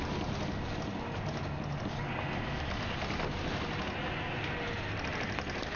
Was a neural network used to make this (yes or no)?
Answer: no